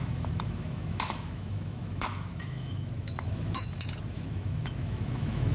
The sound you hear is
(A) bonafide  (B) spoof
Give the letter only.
B